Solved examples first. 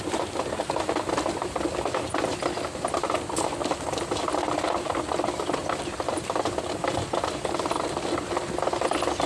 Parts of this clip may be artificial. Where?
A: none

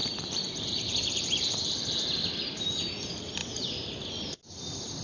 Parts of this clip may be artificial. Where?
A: 0.0-2.9 (vocoder, BigVGAN v2)

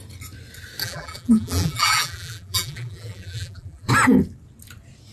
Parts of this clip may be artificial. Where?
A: 0.8-3.9 (vocoder, BigVGAN v2)